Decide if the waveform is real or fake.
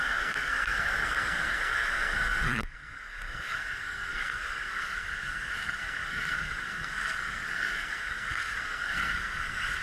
fake